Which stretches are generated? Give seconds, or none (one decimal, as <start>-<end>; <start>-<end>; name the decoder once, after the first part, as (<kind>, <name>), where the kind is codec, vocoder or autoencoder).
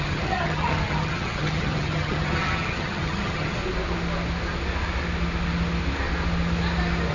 0.0-3.6 (vocoder, HiFi-GAN)